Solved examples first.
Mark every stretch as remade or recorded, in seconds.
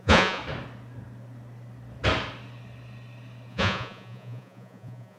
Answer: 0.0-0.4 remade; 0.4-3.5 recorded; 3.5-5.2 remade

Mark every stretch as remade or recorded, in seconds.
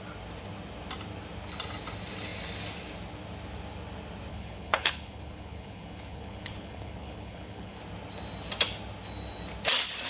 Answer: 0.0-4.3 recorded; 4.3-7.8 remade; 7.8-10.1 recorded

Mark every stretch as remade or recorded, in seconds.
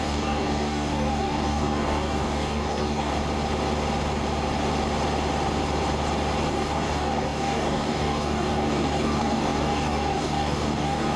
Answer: 0.0-3.1 remade; 3.1-6.5 recorded; 6.5-11.2 remade